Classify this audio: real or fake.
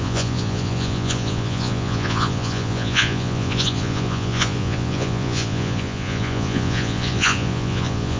fake